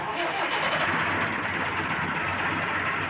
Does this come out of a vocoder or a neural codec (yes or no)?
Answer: no